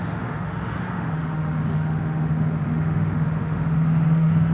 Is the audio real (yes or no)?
no